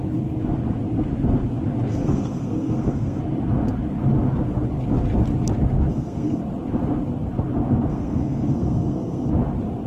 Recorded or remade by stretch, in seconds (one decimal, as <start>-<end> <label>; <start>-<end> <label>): 0.0-1.9 recorded; 1.9-3.2 remade; 3.2-5.9 recorded; 5.9-6.4 remade; 6.4-7.9 recorded; 7.9-9.3 remade; 9.3-9.9 recorded